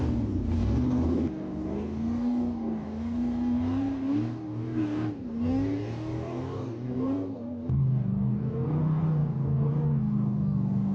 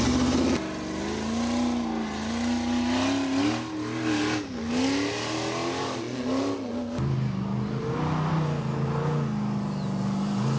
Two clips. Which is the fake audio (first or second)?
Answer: first